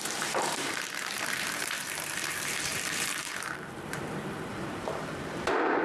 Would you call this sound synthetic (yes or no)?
yes